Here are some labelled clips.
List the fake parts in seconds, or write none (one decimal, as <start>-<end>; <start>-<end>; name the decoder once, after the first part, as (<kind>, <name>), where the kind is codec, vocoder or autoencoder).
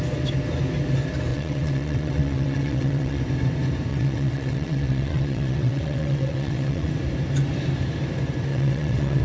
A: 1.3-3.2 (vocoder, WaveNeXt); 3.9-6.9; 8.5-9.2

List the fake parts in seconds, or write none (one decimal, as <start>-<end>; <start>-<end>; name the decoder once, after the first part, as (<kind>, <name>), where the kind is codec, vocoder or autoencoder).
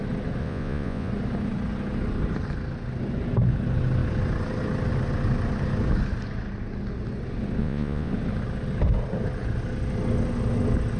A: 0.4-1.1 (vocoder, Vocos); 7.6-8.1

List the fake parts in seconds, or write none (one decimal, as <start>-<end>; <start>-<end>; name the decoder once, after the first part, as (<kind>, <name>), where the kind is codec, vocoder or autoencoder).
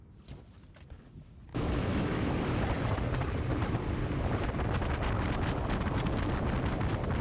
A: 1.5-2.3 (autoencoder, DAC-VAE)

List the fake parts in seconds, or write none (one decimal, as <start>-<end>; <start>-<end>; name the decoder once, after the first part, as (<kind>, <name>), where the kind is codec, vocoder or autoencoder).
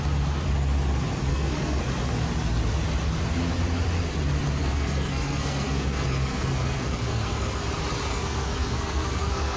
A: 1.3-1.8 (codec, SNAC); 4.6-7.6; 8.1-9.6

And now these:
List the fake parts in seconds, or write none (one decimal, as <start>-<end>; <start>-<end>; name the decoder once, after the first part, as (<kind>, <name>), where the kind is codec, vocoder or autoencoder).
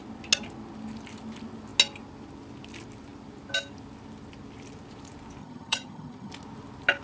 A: 5.4-6.3 (vocoder, HiFi-GAN)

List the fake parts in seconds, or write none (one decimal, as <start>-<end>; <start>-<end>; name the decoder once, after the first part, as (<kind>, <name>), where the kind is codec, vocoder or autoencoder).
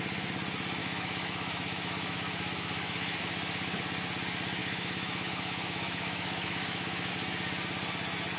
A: 0.8-3.2 (autoencoder, DAC-VAE); 4.6-7.1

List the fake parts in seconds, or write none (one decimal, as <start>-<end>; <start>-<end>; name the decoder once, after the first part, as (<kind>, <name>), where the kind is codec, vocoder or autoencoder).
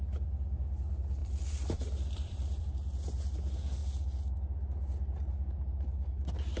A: 1.2-2.6 (vocoder, BigVGAN v2)